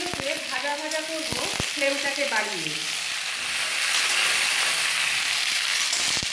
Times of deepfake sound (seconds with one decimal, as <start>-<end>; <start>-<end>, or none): none

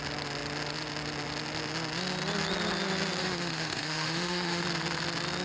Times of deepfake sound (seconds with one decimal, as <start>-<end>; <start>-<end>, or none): 3.2-4.6